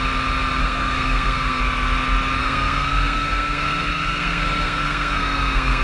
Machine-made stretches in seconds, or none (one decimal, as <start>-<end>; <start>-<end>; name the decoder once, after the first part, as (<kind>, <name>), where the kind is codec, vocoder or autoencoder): 0.6-1.6 (codec, SNAC); 2.4-5.8